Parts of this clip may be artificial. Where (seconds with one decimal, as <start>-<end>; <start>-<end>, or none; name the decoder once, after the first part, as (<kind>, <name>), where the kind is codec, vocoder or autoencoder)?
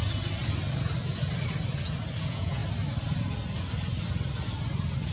2.2-2.6 (vocoder, Vocos)